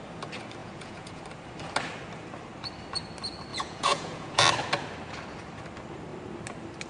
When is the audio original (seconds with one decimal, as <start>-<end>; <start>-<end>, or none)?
0.0-0.6; 1.2-3.5; 4.4-6.9